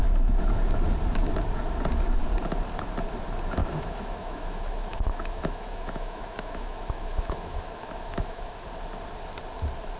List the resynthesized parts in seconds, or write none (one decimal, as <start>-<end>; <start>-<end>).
3.6-8.6